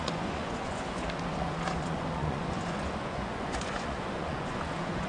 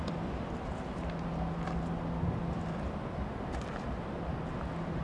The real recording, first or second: second